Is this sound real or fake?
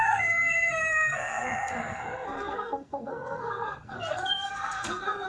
fake